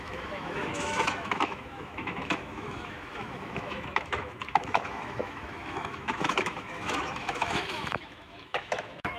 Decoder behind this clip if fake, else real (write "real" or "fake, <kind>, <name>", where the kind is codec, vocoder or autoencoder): fake, autoencoder, DAC-VAE